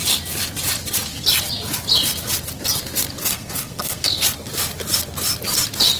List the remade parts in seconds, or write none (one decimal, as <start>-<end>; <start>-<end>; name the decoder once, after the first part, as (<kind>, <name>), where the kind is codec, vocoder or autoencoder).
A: 3.2-4.2 (codec, SNAC)

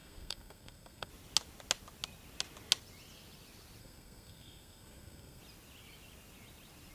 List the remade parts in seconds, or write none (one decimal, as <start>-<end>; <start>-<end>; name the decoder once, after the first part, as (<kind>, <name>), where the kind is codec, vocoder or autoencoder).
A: 0.0-1.1 (codec, SNAC); 3.8-5.4

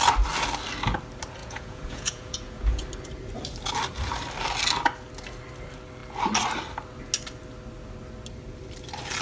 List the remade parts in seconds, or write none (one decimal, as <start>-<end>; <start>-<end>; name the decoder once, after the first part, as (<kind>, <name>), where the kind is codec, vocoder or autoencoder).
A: 1.4-2.8 (vocoder, Vocos)

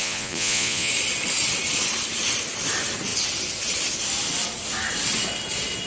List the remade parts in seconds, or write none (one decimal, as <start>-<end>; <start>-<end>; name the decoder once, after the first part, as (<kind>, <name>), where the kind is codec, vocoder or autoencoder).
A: 0.0-0.9 (vocoder, Vocos)

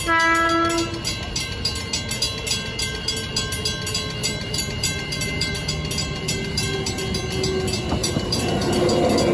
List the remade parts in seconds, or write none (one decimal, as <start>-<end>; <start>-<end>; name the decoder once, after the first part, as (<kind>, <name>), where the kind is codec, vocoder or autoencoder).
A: 4.2-5.5 (vocoder, BigVGAN v2); 6.0-7.0; 8.0-8.7

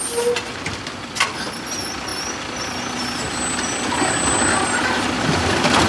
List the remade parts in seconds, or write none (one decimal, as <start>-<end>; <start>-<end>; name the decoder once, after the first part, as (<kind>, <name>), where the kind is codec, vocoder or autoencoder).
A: none

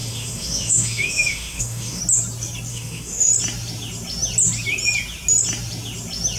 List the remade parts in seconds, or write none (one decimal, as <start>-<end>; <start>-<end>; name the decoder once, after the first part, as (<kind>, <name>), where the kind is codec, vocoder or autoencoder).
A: 0.0-2.0 (autoencoder, DAC-VAE); 2.7-3.3